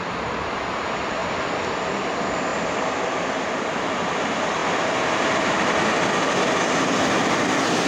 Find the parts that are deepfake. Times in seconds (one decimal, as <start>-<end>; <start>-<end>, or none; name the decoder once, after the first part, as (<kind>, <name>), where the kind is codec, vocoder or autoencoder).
2.5-3.6 (vocoder, BigVGAN v2)